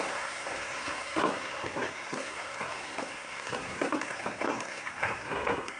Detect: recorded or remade remade